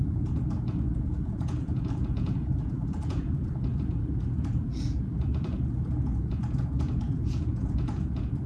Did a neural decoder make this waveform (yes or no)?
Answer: yes